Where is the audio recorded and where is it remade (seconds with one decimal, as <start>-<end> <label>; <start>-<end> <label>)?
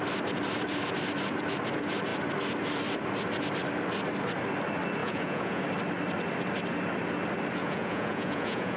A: 0.0-5.0 recorded; 5.0-5.6 remade; 5.6-7.6 recorded; 7.6-8.8 remade